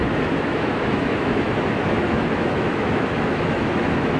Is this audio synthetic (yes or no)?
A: yes